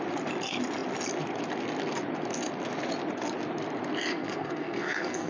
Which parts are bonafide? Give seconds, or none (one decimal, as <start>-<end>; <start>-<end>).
0.0-4.1